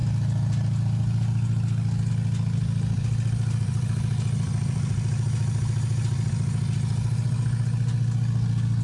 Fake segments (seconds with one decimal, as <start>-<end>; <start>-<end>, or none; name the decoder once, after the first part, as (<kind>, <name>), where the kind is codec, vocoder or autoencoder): 2.6-6.3 (vocoder, BigVGAN v2)